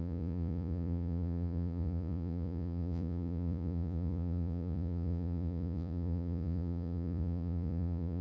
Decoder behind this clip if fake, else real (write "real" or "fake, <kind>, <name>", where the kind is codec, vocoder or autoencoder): fake, vocoder, Vocos